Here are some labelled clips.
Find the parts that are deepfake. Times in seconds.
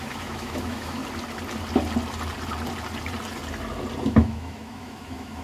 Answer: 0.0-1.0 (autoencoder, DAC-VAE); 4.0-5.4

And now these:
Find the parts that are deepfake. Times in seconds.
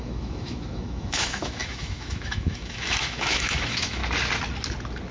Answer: 0.0-4.0 (autoencoder, DAC-VAE)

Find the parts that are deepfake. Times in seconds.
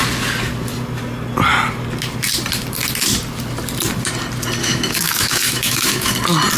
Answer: 4.6-6.1 (autoencoder, DAC-VAE)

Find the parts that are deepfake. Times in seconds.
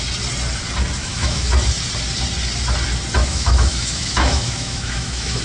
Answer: 1.0-1.5 (autoencoder, DAC-VAE); 3.2-5.4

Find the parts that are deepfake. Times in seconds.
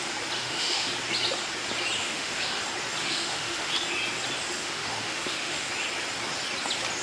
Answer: 0.4-0.9 (autoencoder, DAC-VAE); 2.0-2.6; 3.0-3.7; 4.6-5.7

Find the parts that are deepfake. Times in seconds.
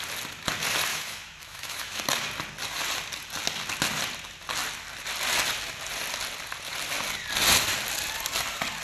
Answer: 0.9-2.0 (autoencoder, DAC-VAE)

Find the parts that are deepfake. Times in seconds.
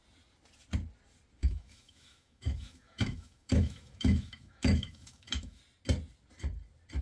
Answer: 1.4-5.6 (autoencoder, DAC-VAE)